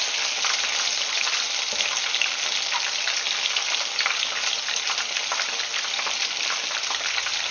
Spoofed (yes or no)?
yes